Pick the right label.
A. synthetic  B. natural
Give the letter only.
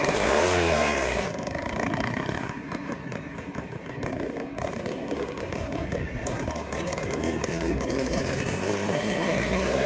A